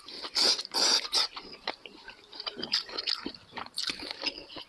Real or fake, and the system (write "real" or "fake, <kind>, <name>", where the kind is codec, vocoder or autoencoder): fake, vocoder, BigVGAN v2